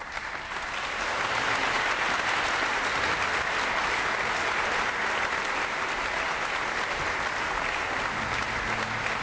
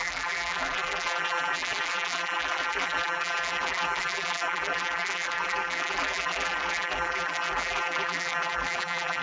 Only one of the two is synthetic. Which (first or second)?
second